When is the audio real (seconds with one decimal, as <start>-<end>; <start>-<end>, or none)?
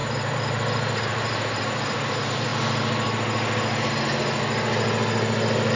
2.5-5.8